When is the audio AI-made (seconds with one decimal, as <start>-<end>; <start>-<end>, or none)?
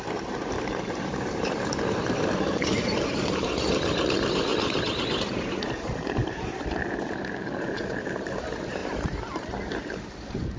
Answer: 0.0-4.5; 5.4-10.6